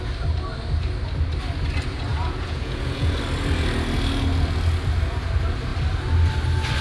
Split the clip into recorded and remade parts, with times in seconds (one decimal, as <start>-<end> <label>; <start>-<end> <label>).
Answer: 0.0-2.1 recorded; 2.1-3.2 remade; 3.2-6.8 recorded